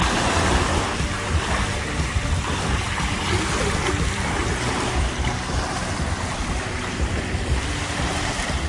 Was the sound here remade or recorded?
recorded